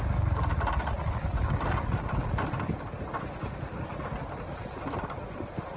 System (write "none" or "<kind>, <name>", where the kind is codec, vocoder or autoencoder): none